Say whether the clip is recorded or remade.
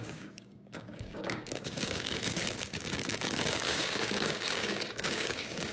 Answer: remade